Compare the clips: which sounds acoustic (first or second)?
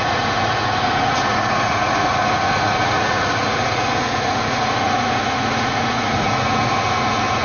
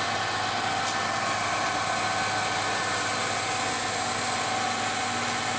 second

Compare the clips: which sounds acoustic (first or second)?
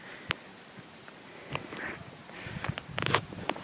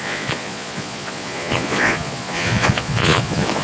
first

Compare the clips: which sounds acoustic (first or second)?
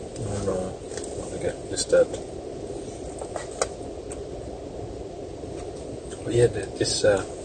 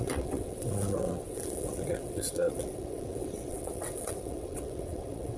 first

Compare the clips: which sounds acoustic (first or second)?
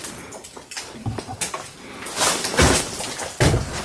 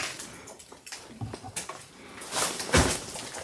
first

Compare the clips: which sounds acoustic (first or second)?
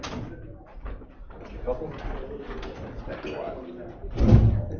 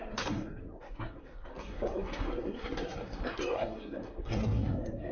first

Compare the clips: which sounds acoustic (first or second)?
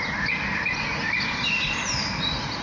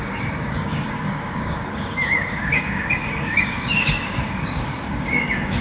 first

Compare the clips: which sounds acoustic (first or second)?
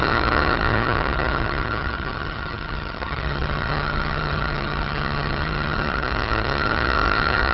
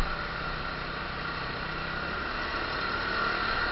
second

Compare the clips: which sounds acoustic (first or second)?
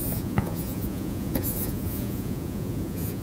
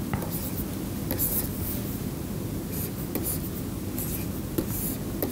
second